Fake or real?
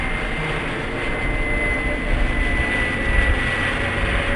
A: real